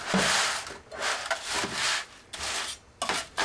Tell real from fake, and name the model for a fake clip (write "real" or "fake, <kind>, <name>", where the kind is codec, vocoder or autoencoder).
real